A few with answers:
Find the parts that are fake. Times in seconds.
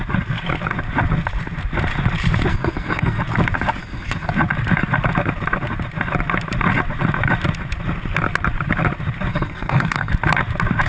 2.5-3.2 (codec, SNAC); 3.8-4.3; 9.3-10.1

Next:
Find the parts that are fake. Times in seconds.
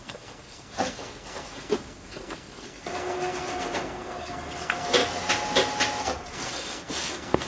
0.0-5.0 (codec, SNAC); 6.0-7.5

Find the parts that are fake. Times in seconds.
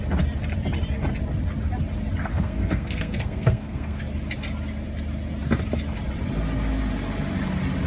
2.3-4.0 (codec, SNAC)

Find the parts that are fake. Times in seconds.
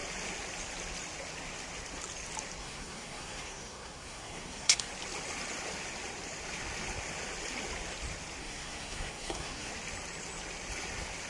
2.6-4.9 (codec, SNAC); 8.4-9.7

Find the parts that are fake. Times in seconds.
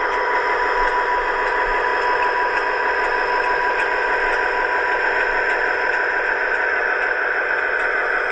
none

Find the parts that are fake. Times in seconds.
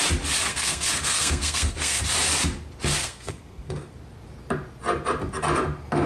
0.5-2.0 (codec, SNAC); 3.0-3.9